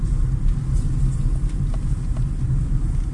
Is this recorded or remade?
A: recorded